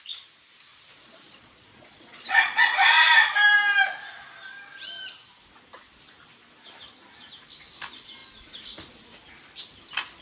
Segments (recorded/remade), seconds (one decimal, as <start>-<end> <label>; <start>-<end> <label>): 0.0-0.7 recorded; 0.7-3.1 remade; 3.1-10.2 recorded